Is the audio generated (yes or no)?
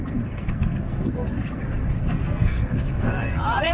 yes